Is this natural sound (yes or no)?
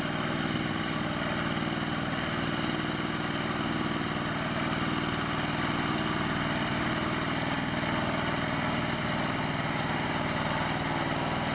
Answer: yes